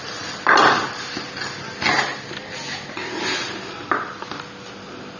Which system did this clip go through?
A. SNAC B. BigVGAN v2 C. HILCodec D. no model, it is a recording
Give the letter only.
D